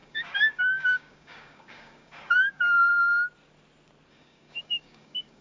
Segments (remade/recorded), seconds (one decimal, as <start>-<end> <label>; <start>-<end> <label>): 0.0-2.9 remade; 2.9-4.1 recorded; 4.1-5.4 remade